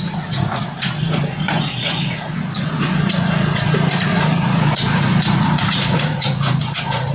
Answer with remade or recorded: remade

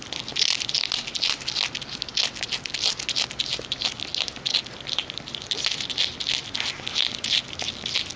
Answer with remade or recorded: recorded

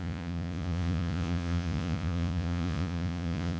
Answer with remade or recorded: remade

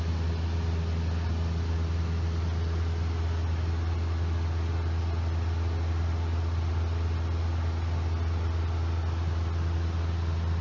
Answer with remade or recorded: recorded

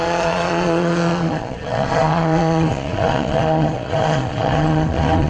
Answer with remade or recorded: remade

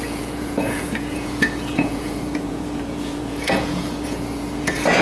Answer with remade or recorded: remade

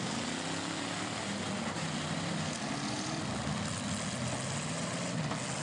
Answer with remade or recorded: recorded